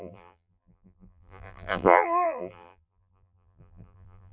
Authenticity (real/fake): fake